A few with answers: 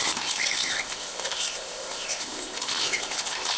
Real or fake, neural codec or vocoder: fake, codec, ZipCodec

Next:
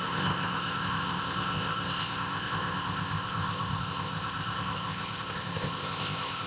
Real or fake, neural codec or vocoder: fake, codec, ZipCodec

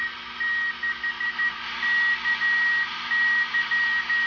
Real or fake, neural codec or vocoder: real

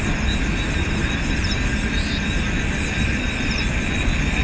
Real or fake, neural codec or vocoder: real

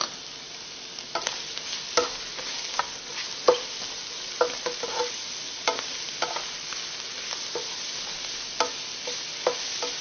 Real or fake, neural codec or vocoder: real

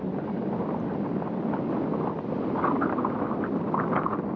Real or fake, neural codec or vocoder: real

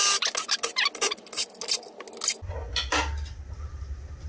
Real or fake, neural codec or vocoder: real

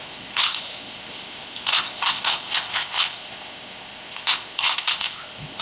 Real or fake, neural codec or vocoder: fake, codec, ZipCodec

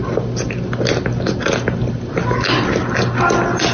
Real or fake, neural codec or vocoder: real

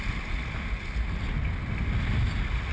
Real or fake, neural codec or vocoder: real